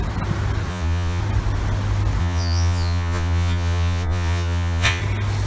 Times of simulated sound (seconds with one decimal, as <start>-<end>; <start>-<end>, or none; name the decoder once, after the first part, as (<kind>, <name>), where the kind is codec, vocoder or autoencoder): 0.7-1.2 (vocoder, Vocos); 2.2-5.0